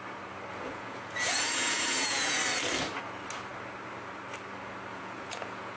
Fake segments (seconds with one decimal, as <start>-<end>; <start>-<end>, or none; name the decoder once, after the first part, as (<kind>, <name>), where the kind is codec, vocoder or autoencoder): 0.5-2.4 (vocoder, Vocos); 4.9-5.8